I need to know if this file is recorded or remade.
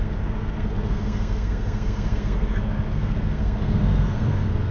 remade